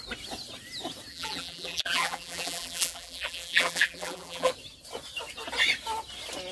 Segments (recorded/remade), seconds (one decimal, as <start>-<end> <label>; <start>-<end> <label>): 0.0-1.1 recorded; 1.1-4.5 remade; 4.5-6.5 recorded